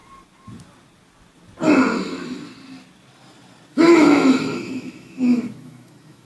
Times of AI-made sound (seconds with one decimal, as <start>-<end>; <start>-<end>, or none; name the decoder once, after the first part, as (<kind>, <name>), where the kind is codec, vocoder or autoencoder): 3.7-6.2 (autoencoder, DAC-VAE)